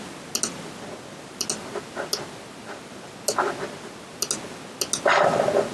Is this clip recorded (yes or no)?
yes